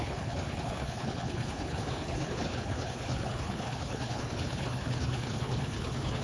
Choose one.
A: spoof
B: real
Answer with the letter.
A